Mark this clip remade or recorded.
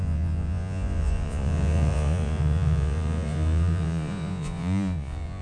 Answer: remade